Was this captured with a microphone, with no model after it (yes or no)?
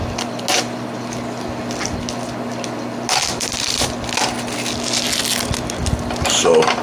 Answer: yes